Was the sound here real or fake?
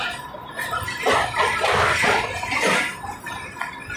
real